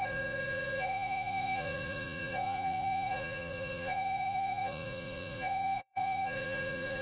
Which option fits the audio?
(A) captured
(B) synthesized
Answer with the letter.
B